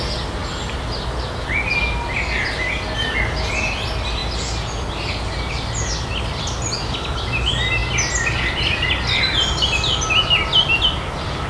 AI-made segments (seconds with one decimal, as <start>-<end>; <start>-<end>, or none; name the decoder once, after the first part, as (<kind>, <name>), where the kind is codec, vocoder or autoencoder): none